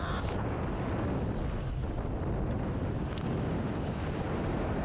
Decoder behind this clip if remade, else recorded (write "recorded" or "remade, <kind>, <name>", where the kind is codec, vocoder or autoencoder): recorded